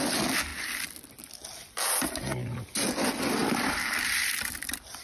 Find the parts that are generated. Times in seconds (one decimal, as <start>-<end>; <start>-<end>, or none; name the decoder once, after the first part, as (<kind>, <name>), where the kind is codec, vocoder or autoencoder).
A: 3.4-5.0 (vocoder, BigVGAN v2)